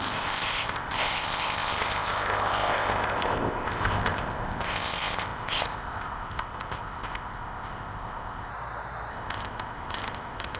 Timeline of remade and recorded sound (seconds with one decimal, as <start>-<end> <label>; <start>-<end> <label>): 0.0-8.5 remade; 8.5-9.1 recorded; 9.1-10.6 remade